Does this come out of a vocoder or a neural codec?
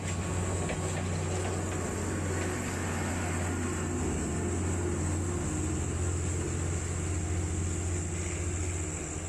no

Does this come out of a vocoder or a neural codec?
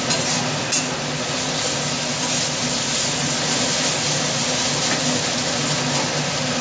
no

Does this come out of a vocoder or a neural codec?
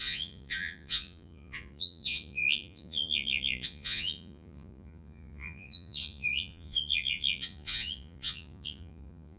yes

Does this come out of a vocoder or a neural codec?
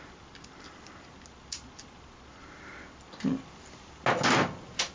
no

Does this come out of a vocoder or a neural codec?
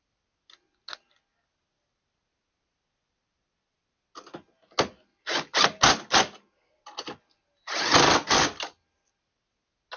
no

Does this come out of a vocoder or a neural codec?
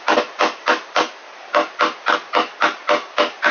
no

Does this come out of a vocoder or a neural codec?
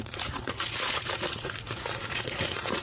yes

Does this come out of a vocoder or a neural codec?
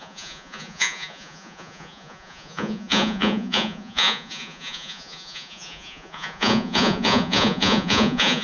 yes